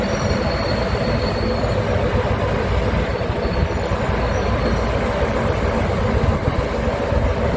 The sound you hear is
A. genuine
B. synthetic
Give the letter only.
A